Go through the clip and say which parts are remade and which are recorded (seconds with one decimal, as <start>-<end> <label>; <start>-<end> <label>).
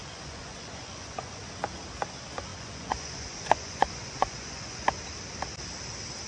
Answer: 0.0-1.4 remade; 1.4-2.5 recorded; 2.5-5.0 remade; 5.0-6.3 recorded